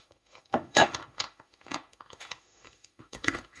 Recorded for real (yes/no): no